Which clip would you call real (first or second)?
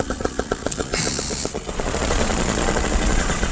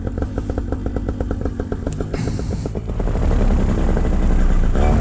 second